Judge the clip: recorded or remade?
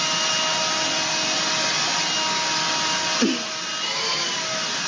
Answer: recorded